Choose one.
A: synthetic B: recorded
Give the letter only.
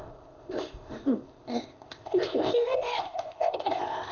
A